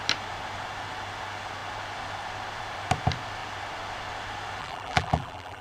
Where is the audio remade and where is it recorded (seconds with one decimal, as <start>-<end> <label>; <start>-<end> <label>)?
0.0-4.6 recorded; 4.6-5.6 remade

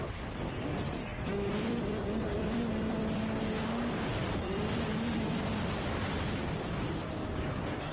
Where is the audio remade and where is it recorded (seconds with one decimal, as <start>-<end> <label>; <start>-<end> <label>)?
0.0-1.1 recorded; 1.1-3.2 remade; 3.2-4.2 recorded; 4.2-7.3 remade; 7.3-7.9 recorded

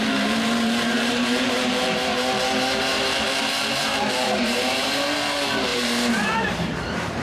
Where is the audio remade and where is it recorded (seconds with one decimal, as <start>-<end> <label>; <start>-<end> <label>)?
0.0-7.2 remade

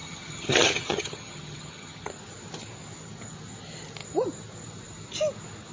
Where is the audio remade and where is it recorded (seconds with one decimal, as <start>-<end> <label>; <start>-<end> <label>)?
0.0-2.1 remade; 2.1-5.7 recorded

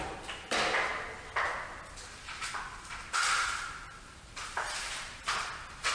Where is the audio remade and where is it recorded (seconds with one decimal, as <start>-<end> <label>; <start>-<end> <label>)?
0.0-3.2 recorded; 3.2-5.5 remade; 5.5-5.9 recorded

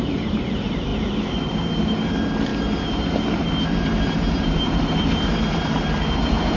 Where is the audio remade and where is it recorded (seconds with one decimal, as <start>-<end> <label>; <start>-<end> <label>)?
0.0-0.9 remade; 0.9-1.5 recorded; 1.5-6.6 remade

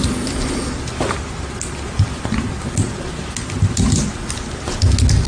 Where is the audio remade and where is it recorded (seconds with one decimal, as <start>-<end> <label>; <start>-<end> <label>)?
0.0-5.3 recorded

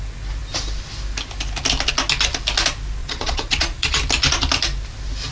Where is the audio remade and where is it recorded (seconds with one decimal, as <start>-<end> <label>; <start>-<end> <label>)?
0.0-3.0 recorded; 3.0-4.0 remade; 4.0-5.3 recorded